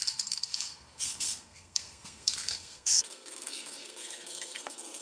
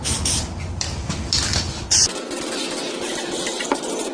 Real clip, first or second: second